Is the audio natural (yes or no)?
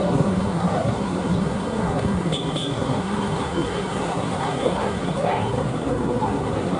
no